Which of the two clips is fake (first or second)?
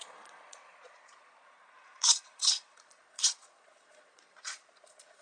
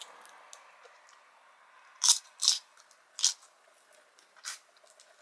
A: first